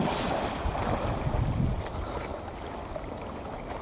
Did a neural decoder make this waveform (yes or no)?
no